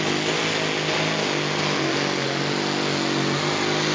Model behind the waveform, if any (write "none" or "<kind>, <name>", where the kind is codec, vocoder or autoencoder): none